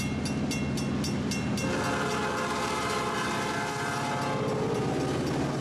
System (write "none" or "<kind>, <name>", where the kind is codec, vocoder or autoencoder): none